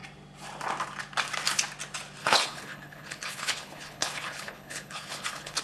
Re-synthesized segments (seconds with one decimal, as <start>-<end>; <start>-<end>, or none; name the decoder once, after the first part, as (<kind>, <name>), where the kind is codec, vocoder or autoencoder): 2.2-5.6 (codec, HILCodec)